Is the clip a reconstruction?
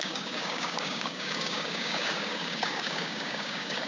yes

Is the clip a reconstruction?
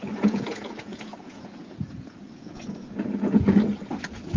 yes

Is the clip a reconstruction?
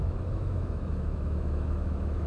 yes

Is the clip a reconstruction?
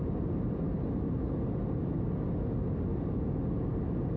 no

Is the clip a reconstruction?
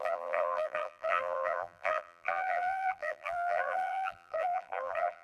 yes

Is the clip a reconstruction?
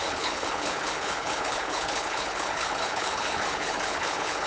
yes